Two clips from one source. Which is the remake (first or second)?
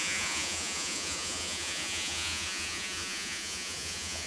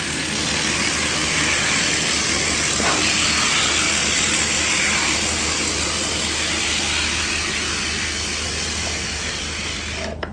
first